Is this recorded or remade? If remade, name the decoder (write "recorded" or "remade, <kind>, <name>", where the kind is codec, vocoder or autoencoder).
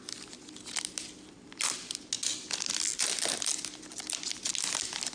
recorded